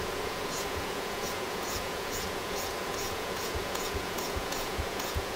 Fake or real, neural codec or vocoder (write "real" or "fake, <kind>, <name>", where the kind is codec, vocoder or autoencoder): fake, vocoder, Vocos